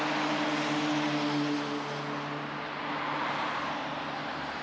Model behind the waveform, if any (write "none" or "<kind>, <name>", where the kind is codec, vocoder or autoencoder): none